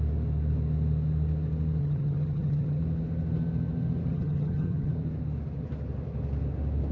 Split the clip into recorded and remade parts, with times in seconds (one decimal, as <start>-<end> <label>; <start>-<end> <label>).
0.0-1.8 recorded; 1.8-2.8 remade; 2.8-4.1 recorded; 4.1-4.9 remade; 4.9-6.9 recorded